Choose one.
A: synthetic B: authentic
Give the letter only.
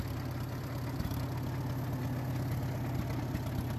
B